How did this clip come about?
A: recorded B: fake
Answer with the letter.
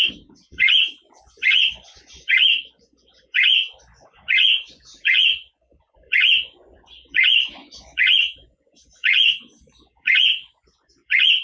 B